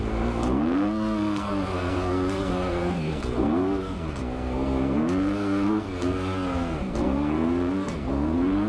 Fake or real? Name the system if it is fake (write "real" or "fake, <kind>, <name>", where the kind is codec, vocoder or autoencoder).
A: fake, codec, SNAC